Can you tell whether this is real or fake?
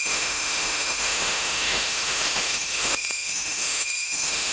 fake